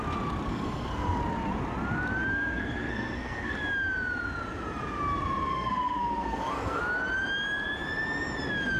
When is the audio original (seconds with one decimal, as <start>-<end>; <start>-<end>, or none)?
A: 0.0-0.5; 1.2-2.3; 3.6-5.5; 6.8-8.8